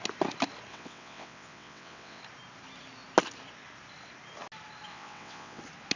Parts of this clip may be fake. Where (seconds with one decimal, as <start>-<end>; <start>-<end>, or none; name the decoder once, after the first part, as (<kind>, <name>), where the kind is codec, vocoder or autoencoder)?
0.7-2.2 (vocoder, WaveNeXt); 4.9-5.6